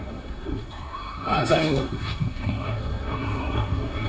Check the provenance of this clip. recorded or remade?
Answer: remade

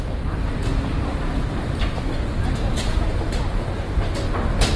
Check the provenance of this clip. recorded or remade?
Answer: recorded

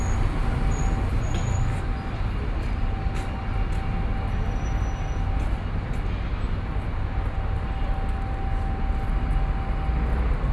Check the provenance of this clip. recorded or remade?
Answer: recorded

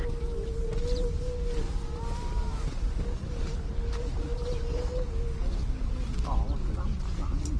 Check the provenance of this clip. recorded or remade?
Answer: recorded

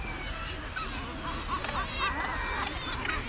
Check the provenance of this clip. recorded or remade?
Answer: recorded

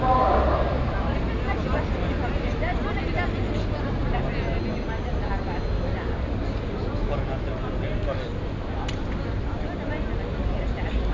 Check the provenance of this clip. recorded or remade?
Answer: recorded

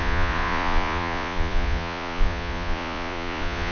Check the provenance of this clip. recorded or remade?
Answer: remade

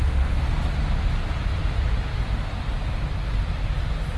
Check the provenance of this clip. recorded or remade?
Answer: recorded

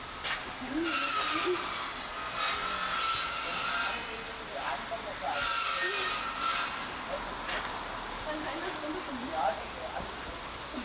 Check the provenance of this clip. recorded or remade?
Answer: recorded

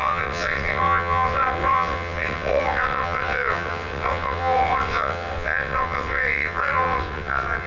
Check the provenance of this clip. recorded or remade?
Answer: remade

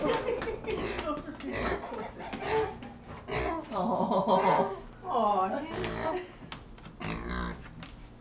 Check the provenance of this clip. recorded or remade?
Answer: recorded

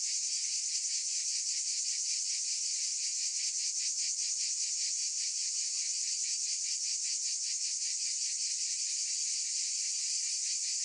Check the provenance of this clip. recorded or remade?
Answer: recorded